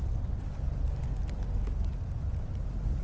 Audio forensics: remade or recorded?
recorded